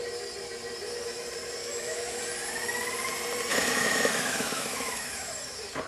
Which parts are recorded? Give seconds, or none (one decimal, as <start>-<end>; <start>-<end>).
0.0-1.6; 2.2-3.5; 5.3-5.9